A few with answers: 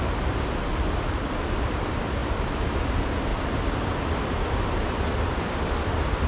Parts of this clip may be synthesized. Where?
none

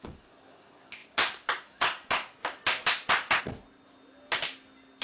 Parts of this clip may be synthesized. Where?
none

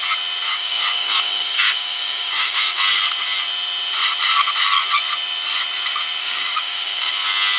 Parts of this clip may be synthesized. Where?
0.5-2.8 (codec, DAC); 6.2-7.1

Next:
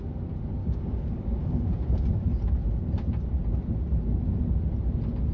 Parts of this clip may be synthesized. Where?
0.6-2.2 (codec, DAC)